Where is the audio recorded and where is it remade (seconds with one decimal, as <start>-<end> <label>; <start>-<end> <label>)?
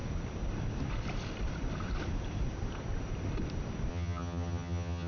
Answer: 0.0-3.9 recorded; 3.9-5.1 remade